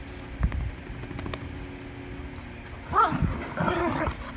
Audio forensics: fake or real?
real